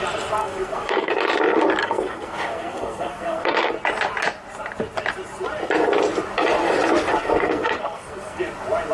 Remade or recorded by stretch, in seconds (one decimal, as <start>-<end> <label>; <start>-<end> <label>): 0.0-0.4 recorded; 0.4-1.1 remade; 1.1-1.8 recorded; 1.8-3.7 remade; 3.7-7.2 recorded; 7.2-8.4 remade; 8.4-8.9 recorded

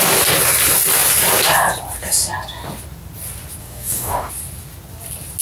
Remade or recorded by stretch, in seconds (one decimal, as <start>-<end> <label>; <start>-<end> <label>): 0.0-3.6 recorded; 3.6-4.3 remade; 4.3-5.4 recorded

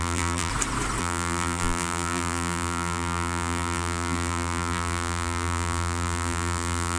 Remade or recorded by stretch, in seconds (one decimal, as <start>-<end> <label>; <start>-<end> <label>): 0.0-0.5 remade; 0.5-1.0 recorded; 1.0-7.0 remade

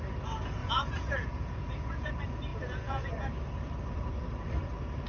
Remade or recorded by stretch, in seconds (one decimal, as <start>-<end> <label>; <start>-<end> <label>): 0.0-0.6 recorded; 0.6-2.1 remade; 2.1-2.5 recorded; 2.5-3.1 remade; 3.1-5.1 recorded

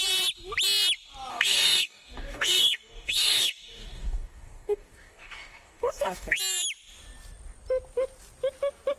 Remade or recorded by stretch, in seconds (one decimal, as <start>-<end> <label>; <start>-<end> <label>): 0.0-1.3 recorded; 1.3-6.4 remade; 6.4-9.0 recorded